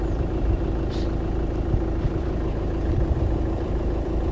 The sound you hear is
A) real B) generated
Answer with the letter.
B